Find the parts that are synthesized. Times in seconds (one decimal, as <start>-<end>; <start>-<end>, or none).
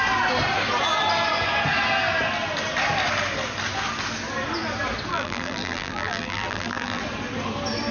5.1-7.0